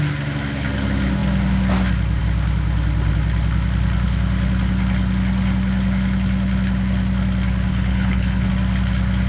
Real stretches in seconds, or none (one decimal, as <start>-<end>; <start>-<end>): 0.0-7.7; 8.5-9.3